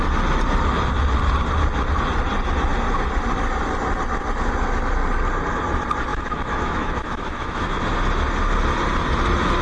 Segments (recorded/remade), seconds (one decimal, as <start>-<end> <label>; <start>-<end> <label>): 0.0-6.1 recorded; 6.1-7.8 remade; 7.8-9.6 recorded